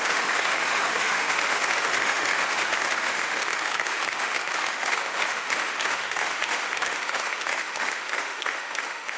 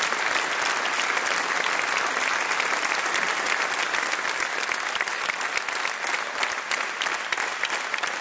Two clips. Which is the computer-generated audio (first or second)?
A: first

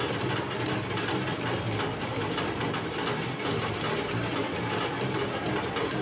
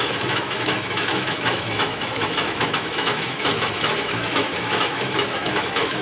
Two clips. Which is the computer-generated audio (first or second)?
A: second